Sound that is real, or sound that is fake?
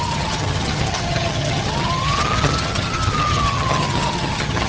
fake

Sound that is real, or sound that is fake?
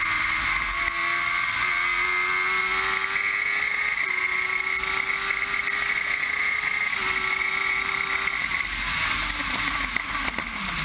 real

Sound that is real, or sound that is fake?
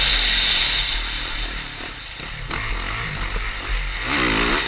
real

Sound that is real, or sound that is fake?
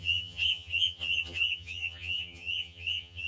fake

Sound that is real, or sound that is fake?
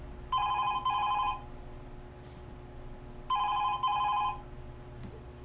real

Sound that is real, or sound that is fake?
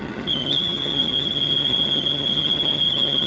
fake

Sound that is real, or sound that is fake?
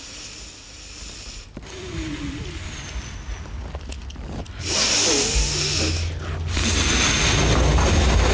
real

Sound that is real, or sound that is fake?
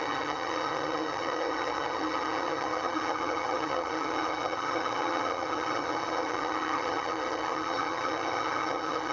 fake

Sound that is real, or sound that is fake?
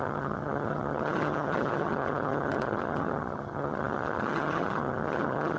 fake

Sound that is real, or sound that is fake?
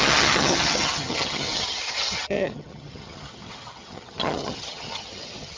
fake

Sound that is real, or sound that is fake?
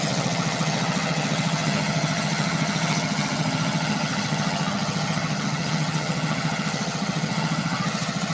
fake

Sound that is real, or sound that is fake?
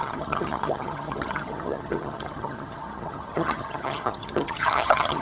fake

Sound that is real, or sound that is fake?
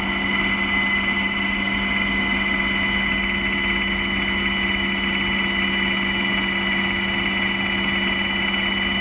real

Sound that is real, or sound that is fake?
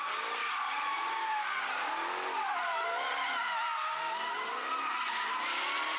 real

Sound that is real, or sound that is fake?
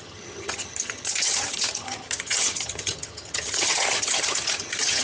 fake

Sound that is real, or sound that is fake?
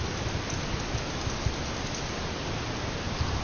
real